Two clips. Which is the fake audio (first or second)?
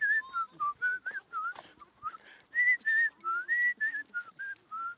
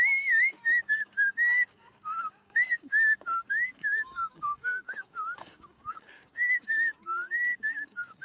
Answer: second